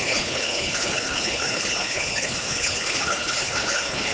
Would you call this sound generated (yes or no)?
yes